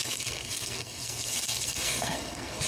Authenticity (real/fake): fake